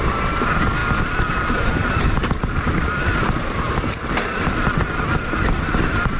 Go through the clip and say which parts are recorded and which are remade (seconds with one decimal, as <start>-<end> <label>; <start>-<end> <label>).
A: 0.0-6.2 recorded